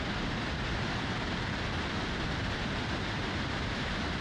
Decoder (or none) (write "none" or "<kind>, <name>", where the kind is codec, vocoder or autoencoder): none